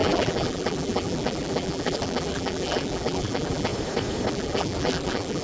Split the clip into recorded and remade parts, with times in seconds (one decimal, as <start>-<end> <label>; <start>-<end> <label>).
0.0-3.7 remade; 3.7-4.3 recorded; 4.3-5.4 remade